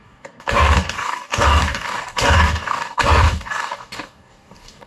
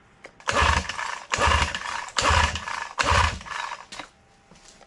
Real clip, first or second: second